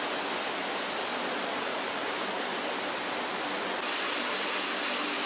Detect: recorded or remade recorded